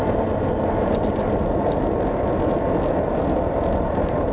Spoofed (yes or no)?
no